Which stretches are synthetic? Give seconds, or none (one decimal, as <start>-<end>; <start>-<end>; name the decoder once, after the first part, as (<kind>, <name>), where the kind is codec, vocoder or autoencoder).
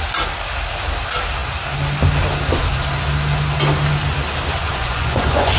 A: 4.6-5.6 (vocoder, Vocos)